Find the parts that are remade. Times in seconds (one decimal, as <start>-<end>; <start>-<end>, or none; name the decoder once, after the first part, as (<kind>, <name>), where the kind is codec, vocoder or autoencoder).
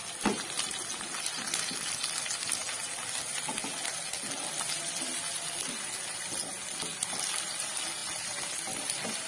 none